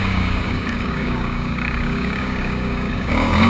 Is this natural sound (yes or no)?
no